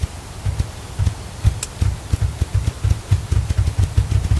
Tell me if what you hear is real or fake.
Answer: real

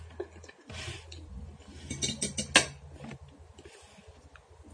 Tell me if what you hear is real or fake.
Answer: real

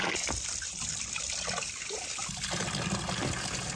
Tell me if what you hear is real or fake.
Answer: real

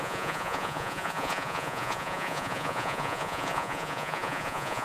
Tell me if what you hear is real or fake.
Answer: fake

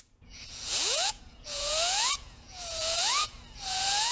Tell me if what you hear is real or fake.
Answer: fake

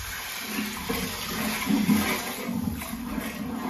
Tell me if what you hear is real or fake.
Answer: real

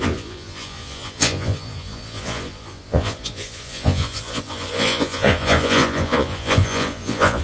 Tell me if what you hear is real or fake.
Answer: fake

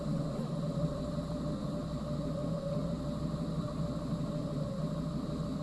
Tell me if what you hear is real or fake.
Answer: real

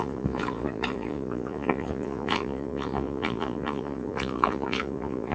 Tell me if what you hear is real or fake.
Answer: fake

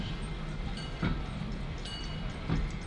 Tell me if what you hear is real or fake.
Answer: real